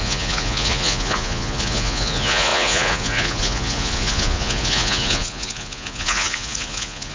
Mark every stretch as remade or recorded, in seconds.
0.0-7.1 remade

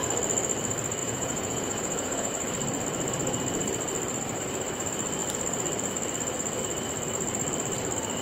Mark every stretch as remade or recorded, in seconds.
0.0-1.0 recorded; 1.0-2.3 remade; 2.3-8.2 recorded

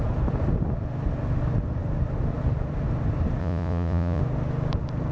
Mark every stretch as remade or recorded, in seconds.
0.0-3.4 recorded; 3.4-4.2 remade; 4.2-5.1 recorded

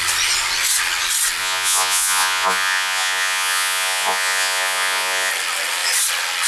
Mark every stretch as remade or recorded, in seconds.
0.0-1.4 recorded; 1.4-5.3 remade; 5.3-6.5 recorded

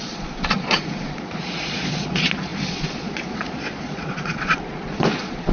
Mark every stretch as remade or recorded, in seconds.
0.0-5.5 remade

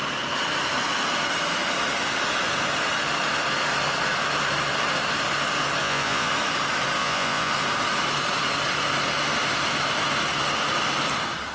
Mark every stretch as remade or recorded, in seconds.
0.0-5.8 recorded; 5.8-6.3 remade; 6.3-7.0 recorded; 7.0-7.5 remade; 7.5-11.5 recorded

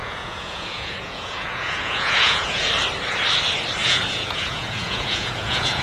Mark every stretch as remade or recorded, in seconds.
0.0-2.7 remade; 2.7-3.8 recorded; 3.8-5.8 remade